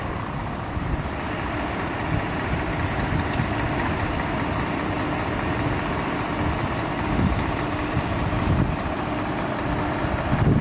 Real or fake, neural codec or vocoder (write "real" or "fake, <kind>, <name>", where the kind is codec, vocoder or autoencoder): real